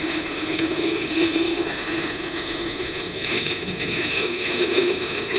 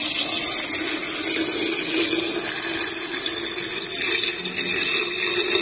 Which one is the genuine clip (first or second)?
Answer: second